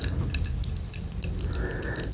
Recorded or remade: recorded